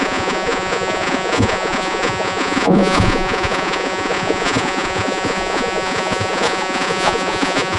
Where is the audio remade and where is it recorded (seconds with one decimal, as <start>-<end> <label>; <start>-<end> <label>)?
0.0-7.8 remade